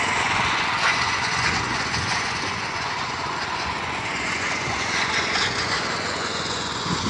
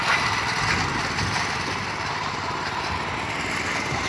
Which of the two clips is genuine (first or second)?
second